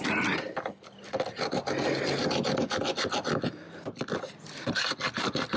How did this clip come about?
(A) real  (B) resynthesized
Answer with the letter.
A